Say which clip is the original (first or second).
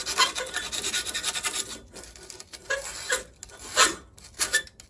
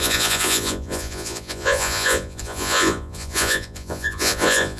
first